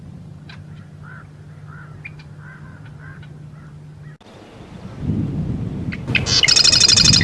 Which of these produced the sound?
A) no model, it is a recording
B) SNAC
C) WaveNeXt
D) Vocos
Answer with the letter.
A